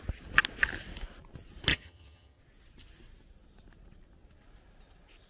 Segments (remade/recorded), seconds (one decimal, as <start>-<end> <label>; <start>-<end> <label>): 0.0-1.7 recorded; 1.7-2.4 remade; 2.4-5.3 recorded